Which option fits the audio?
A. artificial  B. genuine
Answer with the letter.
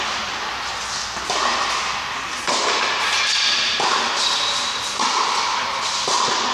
B